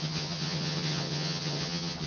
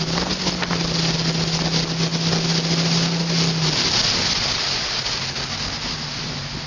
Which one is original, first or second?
second